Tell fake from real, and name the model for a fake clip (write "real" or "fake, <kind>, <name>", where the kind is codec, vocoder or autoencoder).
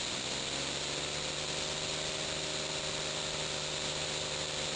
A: real